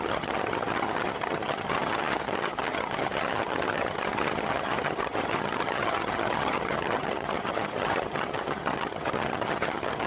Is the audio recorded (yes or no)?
no